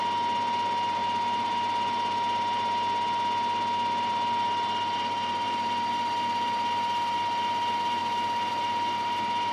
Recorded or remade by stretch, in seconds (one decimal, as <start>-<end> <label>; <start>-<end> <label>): 0.0-9.5 recorded